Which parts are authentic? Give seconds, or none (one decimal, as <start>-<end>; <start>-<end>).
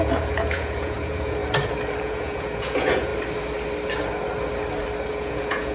1.4-2.0; 3.1-5.1